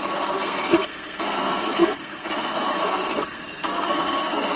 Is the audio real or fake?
fake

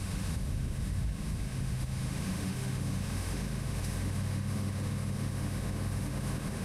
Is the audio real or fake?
fake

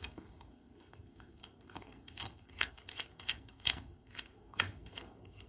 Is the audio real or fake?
fake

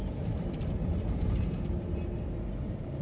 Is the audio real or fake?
real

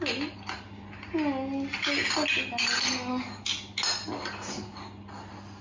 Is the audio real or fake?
real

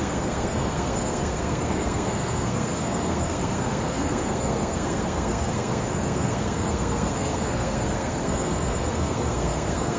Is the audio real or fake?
fake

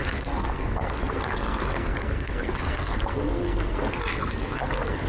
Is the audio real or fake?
fake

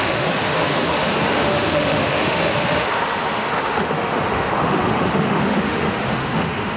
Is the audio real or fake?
fake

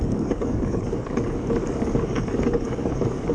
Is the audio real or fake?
fake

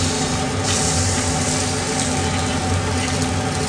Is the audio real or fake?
real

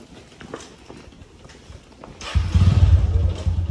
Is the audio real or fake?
real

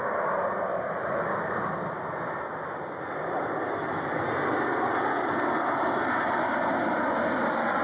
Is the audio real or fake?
real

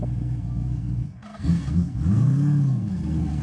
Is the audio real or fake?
fake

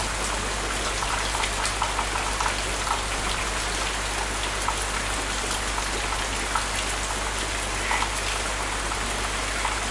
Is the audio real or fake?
real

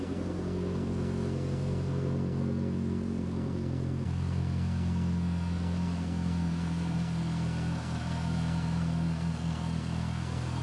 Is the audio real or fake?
fake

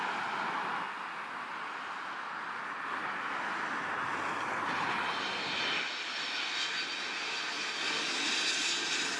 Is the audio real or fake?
real